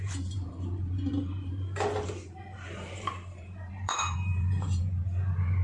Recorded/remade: remade